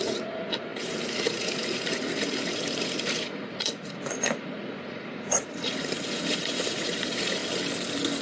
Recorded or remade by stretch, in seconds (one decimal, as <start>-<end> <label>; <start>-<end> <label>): 0.0-7.4 remade; 7.4-8.2 recorded